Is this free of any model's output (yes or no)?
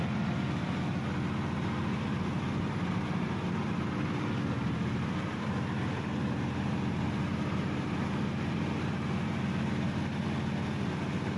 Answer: yes